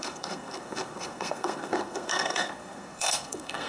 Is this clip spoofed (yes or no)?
yes